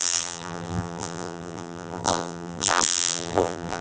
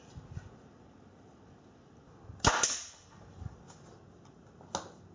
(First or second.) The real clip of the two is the second